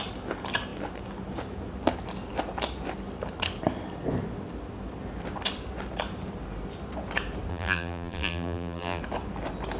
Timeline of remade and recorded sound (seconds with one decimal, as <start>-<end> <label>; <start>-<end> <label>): 0.0-7.5 recorded; 7.5-9.0 remade; 9.0-9.8 recorded